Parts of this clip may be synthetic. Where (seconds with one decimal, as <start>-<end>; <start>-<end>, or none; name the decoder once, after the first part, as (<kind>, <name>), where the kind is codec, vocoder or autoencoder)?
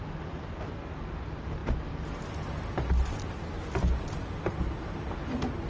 none